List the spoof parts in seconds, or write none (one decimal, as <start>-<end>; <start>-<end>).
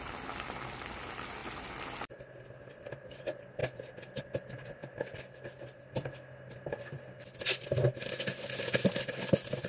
none